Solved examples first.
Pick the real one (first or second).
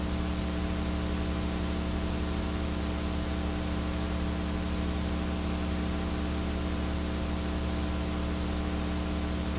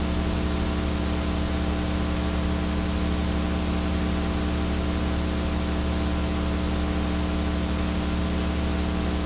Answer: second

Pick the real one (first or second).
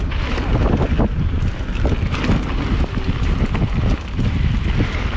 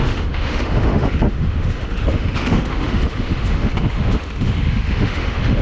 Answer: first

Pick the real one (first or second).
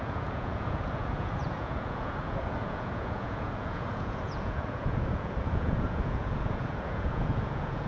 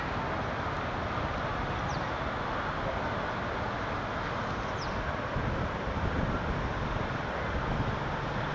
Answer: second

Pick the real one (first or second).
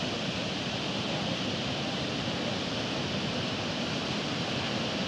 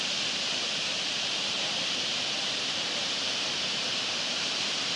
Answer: first